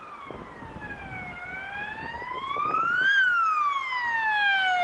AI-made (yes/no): no